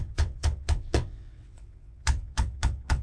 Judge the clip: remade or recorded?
remade